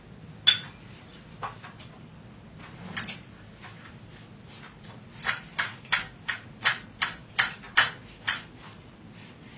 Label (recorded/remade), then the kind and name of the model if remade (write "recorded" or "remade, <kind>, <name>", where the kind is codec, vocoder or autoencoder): recorded